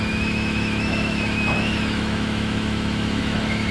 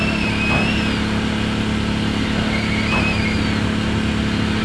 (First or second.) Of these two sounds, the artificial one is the first